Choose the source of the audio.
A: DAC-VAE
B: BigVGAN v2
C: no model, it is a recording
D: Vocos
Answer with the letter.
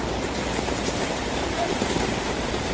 B